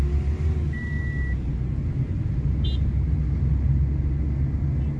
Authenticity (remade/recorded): recorded